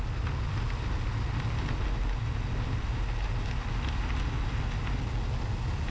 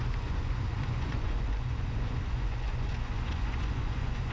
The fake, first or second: second